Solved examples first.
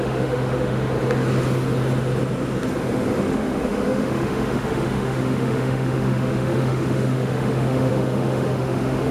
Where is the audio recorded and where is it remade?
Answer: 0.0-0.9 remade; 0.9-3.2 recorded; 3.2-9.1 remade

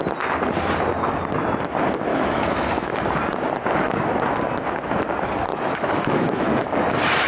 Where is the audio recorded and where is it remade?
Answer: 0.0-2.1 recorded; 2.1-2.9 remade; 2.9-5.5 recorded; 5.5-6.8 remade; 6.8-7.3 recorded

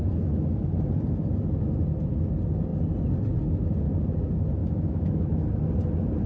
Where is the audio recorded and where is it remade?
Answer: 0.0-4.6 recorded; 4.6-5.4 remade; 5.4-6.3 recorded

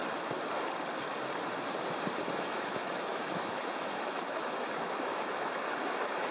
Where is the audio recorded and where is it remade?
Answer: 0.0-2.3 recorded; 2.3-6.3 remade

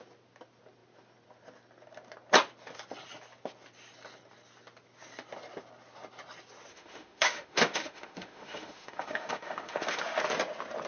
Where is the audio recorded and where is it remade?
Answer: 0.0-6.7 recorded; 6.7-10.2 remade; 10.2-10.9 recorded

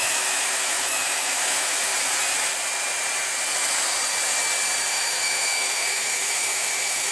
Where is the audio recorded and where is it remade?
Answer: 0.0-1.9 remade; 1.9-4.9 recorded; 4.9-7.1 remade

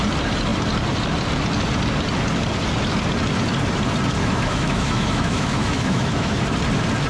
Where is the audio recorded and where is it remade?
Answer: 0.0-4.2 recorded; 4.2-6.4 remade; 6.4-7.1 recorded

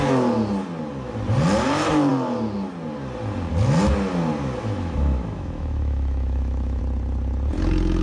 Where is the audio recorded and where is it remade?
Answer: 0.0-4.6 recorded; 4.6-6.8 remade; 6.8-8.0 recorded